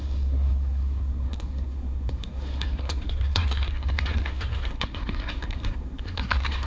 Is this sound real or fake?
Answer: fake